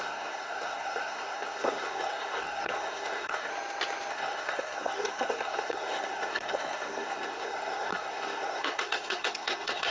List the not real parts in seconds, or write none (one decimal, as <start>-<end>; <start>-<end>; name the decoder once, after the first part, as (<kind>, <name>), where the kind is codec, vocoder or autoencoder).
0.0-3.5 (codec, SNAC); 4.1-9.9